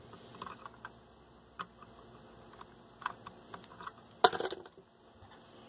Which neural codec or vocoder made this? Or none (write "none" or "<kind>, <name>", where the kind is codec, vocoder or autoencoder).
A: none